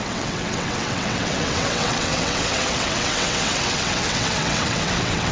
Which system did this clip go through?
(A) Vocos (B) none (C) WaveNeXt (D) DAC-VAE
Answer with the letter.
C